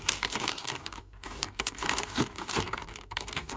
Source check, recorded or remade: remade